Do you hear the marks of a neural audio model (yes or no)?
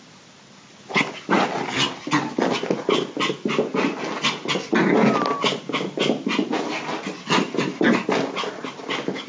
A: no